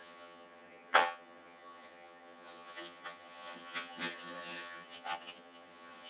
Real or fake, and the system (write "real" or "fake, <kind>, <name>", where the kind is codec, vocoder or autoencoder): fake, vocoder, HiFi-GAN